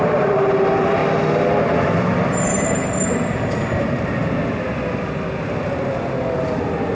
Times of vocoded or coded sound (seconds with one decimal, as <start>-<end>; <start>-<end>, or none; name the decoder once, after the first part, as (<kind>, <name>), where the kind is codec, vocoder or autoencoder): 0.0-1.0 (vocoder, BigVGAN v2); 1.6-4.2; 6.0-6.9